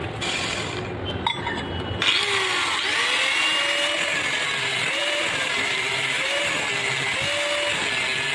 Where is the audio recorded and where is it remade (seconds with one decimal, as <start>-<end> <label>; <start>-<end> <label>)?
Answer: 0.0-5.0 recorded; 5.0-6.4 remade; 6.4-8.3 recorded